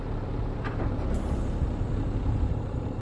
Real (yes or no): no